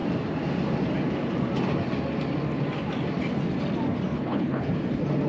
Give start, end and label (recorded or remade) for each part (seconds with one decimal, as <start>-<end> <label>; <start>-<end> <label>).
0.0-4.1 recorded; 4.1-4.7 remade; 4.7-5.3 recorded